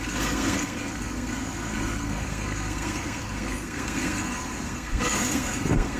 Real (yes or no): no